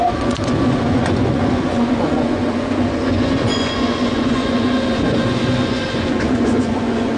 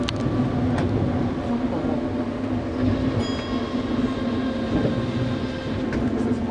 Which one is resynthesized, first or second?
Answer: first